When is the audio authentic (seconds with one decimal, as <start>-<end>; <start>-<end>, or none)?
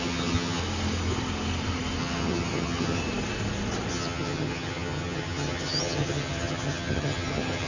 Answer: 0.6-2.0; 3.0-3.9